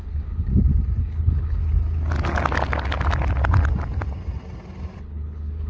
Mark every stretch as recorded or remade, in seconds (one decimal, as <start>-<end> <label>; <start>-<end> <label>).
0.0-0.5 remade; 0.5-1.0 recorded; 1.0-1.6 remade; 1.6-5.0 recorded; 5.0-5.7 remade